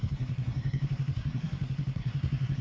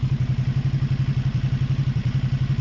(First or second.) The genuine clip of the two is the second